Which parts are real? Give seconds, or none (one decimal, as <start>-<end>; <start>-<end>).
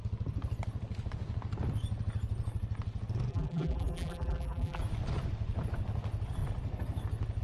0.0-3.3; 4.8-7.4